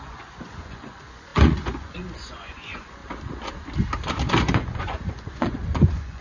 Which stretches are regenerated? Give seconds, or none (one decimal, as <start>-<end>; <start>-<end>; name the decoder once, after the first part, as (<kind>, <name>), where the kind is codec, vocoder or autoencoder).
0.0-3.0 (vocoder, Vocos); 4.4-6.2